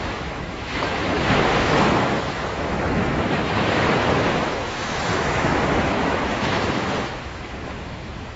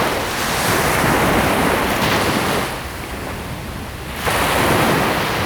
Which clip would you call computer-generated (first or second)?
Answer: first